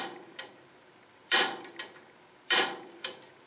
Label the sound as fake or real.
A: fake